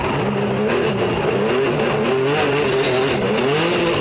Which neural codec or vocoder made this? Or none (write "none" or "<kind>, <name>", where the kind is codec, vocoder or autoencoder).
none